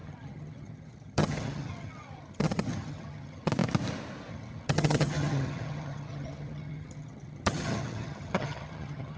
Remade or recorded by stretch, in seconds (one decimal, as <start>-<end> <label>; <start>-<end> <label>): 0.0-3.5 remade; 3.5-4.3 recorded; 4.3-9.2 remade